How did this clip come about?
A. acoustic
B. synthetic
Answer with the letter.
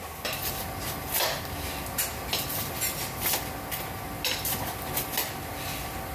A